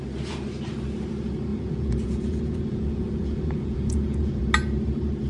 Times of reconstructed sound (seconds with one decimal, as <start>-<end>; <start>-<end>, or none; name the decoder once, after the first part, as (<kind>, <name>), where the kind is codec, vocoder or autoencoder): 1.5-4.4 (vocoder, Vocos)